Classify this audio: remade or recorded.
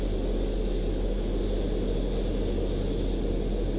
recorded